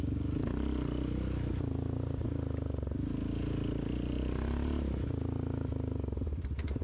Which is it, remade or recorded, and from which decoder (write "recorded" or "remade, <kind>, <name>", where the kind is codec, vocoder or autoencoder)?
recorded